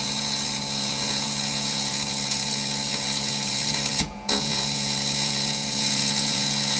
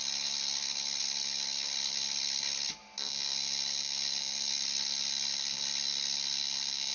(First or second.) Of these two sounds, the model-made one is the first